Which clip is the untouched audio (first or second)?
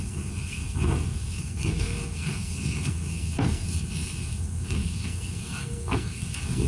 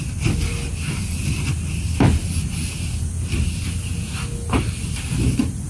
second